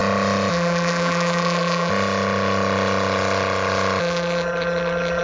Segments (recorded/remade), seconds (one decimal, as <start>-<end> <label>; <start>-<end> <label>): 0.0-0.5 recorded; 0.5-1.9 remade; 1.9-4.0 recorded; 4.0-5.2 remade